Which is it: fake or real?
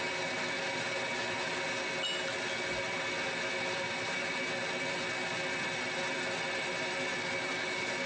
real